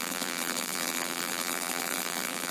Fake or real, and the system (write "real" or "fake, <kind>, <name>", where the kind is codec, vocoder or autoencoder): fake, vocoder, BigVGAN v2